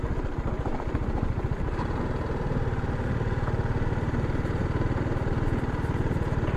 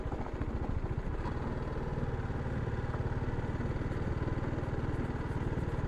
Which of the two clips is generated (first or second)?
first